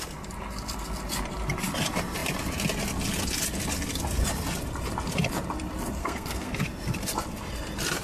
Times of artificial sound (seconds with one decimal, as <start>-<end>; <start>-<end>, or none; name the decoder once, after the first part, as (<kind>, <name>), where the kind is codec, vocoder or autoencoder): 6.0-6.6 (codec, SNAC)